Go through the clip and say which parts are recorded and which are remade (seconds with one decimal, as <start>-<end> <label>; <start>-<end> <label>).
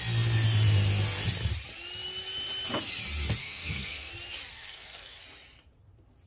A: 0.0-3.4 recorded; 3.4-4.1 remade; 4.1-4.5 recorded; 4.5-5.2 remade; 5.2-6.3 recorded